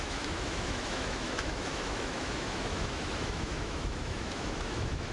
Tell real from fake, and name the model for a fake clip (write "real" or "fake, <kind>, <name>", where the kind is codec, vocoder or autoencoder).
fake, autoencoder, DAC-VAE